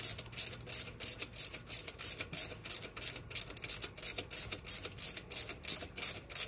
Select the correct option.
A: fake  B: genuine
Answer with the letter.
B